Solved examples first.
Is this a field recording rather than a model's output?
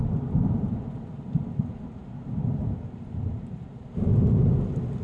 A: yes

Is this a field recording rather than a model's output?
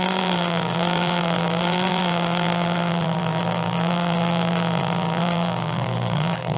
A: no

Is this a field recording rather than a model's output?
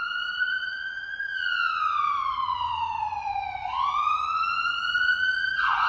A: no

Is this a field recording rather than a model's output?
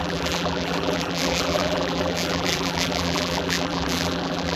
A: no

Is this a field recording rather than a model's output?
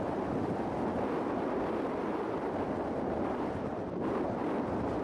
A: yes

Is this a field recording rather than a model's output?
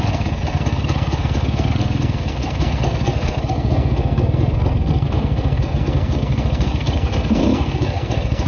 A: no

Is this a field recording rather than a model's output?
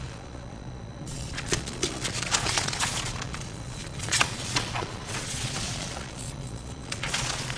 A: no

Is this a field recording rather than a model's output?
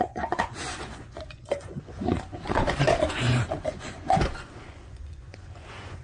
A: no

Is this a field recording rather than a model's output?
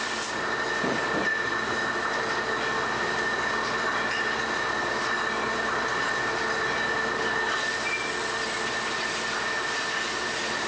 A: yes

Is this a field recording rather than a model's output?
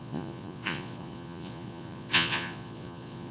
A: no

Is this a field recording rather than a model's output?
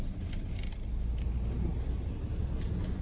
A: yes